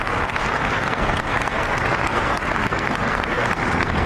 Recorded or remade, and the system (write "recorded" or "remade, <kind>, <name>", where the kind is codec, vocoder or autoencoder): remade, codec, SNAC